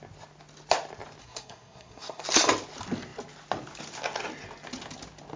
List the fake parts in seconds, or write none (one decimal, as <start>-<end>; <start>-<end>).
1.2-2.2